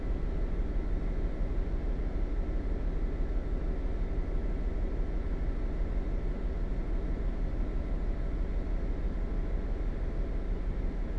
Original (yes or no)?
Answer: yes